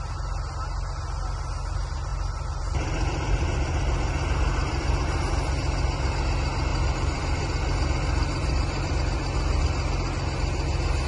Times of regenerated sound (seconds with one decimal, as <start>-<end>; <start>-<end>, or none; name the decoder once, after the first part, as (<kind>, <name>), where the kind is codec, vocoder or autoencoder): 2.1-5.3 (vocoder, BigVGAN v2); 6.7-8.9

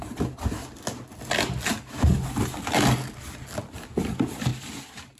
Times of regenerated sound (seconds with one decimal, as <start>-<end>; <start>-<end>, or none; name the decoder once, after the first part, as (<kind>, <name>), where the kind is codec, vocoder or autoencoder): 4.5-5.2 (vocoder, BigVGAN v2)

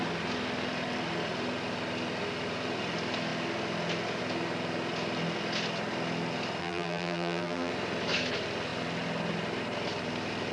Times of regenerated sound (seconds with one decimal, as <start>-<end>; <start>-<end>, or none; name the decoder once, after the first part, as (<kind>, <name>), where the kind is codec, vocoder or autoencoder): 6.6-7.7 (vocoder, BigVGAN v2)